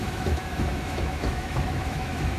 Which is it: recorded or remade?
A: remade